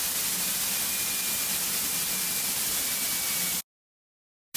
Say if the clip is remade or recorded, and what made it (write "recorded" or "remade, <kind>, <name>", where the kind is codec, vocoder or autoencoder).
recorded